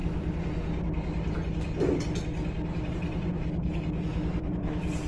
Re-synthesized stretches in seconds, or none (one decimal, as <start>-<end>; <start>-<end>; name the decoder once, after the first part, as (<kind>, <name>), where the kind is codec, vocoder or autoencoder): 2.9-3.3 (vocoder, BigVGAN v2); 4.4-5.1